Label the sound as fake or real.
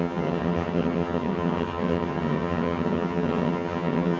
fake